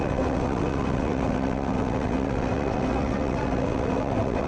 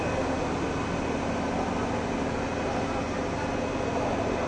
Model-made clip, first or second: first